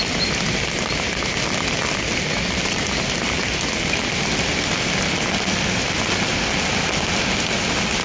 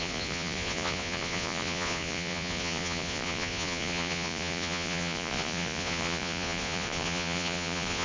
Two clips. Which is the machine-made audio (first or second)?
second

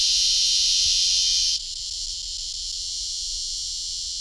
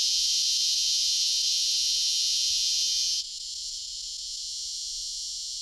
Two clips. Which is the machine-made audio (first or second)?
second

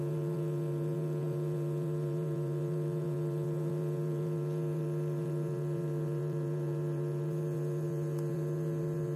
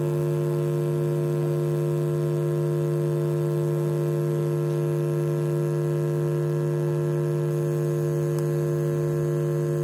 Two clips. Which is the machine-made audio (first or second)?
first